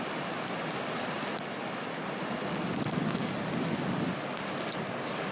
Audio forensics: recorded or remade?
recorded